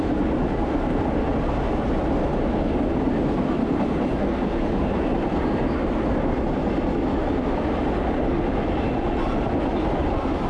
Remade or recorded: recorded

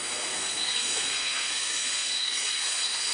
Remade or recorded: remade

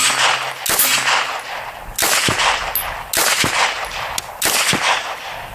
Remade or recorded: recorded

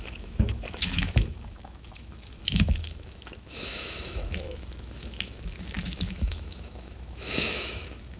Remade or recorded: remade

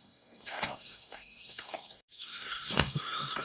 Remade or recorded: remade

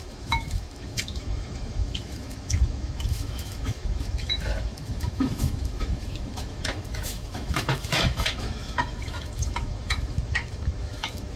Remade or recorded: remade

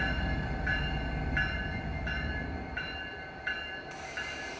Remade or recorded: recorded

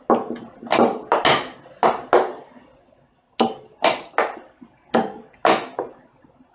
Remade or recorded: recorded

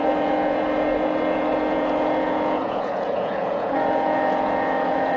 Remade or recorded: remade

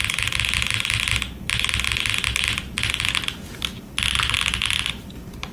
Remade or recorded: recorded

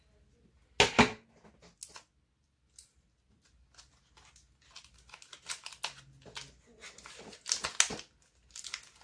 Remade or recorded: recorded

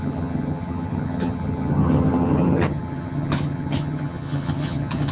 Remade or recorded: remade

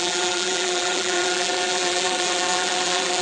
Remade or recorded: remade